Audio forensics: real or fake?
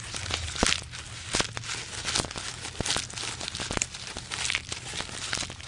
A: real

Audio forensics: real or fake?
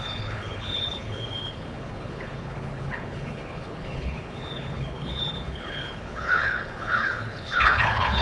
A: fake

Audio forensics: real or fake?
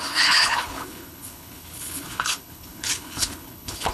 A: fake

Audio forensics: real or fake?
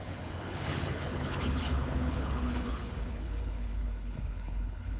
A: fake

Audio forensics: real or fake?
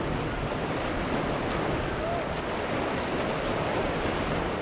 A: real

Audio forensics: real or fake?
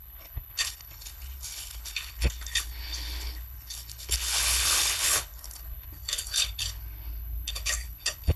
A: fake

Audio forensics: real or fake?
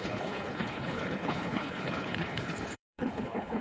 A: fake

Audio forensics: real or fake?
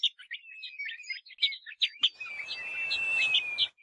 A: real